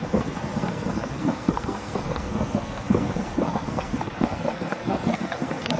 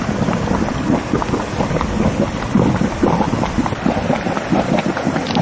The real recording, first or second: second